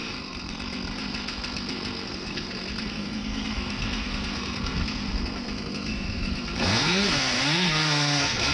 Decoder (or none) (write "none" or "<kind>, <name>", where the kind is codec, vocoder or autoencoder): codec, SNAC